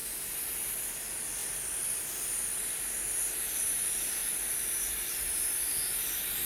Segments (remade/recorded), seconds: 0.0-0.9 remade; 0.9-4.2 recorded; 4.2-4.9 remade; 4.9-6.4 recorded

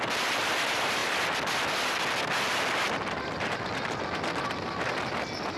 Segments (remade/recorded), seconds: 0.0-5.6 recorded